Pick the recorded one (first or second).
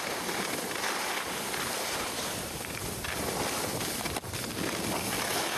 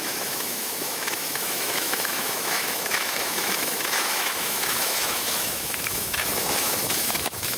first